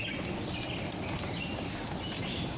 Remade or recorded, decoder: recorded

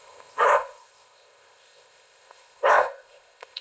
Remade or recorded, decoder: remade, codec, ZipCodec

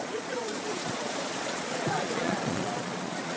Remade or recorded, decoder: remade, vocoder, Vocos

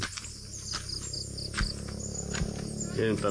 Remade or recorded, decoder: recorded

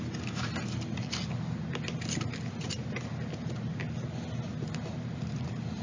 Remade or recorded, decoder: recorded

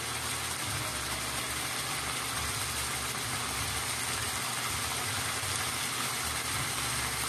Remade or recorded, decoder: recorded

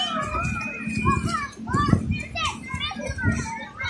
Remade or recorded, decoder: recorded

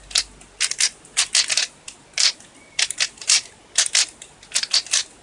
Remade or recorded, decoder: recorded